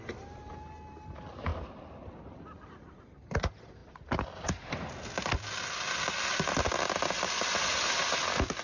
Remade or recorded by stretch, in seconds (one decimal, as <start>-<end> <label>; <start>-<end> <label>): 0.0-8.6 recorded